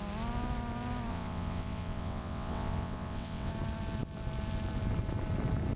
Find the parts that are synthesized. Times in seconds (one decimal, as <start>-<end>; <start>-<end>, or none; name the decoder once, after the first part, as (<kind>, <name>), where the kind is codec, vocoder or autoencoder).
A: 1.1-3.5 (vocoder, WaveNeXt)